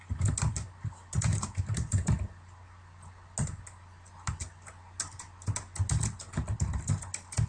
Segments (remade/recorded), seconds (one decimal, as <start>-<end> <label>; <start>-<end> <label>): 0.0-7.5 recorded